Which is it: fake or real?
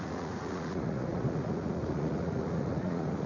fake